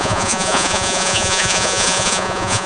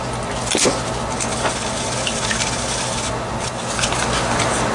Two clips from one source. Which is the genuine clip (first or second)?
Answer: second